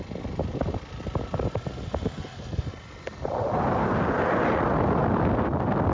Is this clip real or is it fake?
real